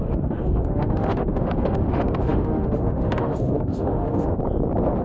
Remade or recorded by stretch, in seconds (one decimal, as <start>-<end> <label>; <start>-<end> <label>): 0.0-4.4 remade; 4.4-5.0 recorded